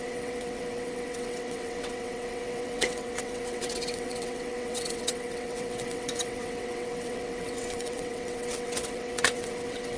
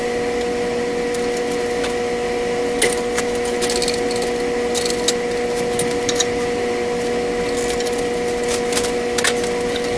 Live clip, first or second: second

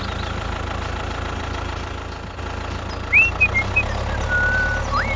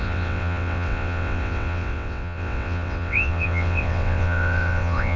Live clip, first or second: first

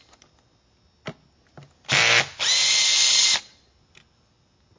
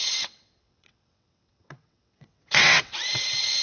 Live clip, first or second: first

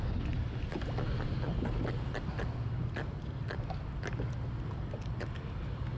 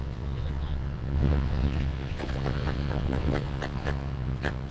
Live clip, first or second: first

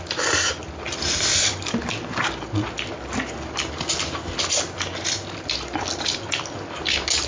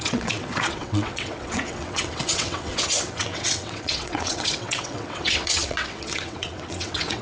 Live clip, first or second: first